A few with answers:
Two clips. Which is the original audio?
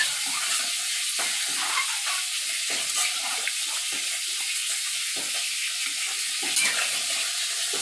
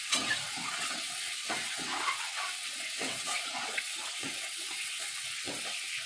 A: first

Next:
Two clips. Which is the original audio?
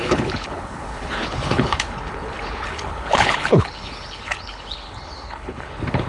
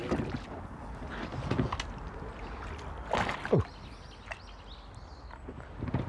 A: second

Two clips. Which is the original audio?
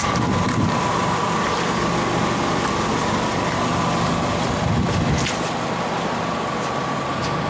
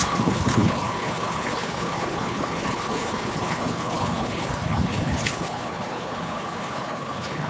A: first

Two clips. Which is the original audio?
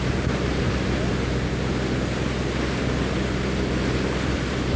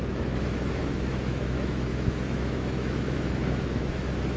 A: first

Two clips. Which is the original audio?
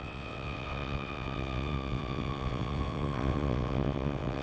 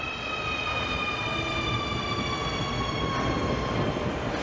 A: second